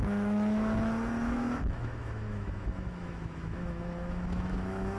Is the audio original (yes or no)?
no